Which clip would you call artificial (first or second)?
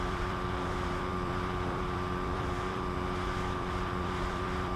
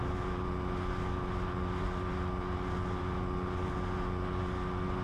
first